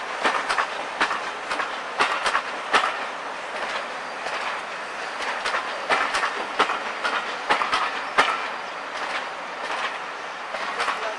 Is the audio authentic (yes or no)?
yes